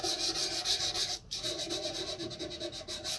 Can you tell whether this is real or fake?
real